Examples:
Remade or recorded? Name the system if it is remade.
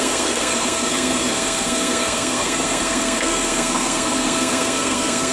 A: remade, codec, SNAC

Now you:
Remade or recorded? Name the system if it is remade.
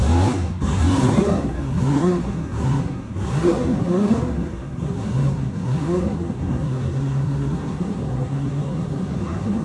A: remade, codec, SNAC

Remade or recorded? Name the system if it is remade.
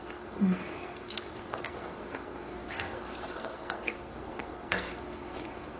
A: remade, codec, SNAC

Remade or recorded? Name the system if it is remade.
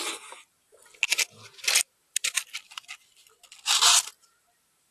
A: recorded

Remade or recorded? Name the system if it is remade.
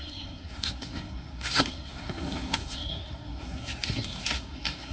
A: remade, codec, SNAC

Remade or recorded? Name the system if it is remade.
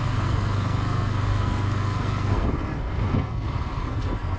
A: remade, codec, SNAC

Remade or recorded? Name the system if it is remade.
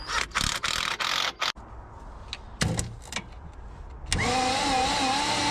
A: recorded